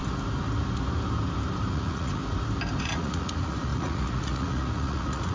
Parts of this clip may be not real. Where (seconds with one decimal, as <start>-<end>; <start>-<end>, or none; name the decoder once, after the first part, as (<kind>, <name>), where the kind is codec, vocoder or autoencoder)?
1.7-2.2 (vocoder, Vocos); 2.8-5.3